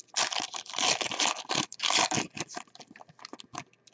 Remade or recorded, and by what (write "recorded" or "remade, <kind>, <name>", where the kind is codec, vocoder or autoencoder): recorded